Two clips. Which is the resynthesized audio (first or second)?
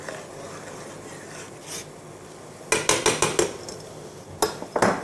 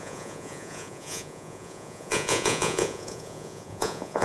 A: second